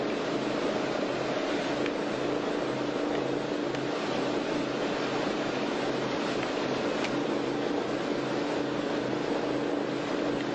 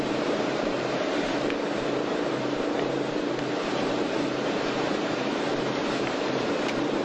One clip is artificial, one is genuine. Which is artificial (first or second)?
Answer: second